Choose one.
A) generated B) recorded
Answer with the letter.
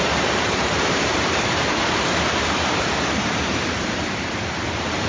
A